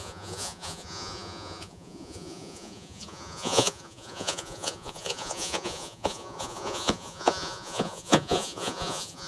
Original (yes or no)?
no